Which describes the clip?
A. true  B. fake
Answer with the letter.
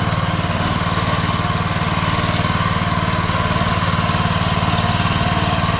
A